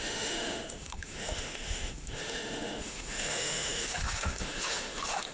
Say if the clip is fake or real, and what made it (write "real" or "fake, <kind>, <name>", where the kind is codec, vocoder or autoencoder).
fake, autoencoder, DAC-VAE